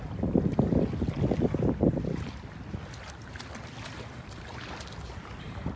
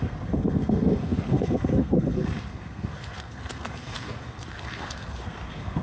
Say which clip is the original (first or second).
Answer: first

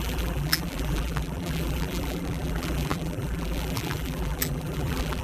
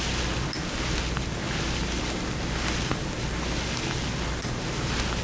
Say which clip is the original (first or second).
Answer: second